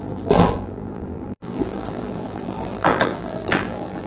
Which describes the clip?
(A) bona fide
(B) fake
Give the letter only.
B